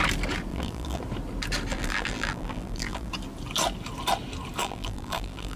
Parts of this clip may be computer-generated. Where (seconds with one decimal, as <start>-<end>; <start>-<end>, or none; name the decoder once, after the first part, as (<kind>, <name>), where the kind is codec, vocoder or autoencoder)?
0.5-1.0 (vocoder, BigVGAN v2); 1.7-3.1; 4.6-5.6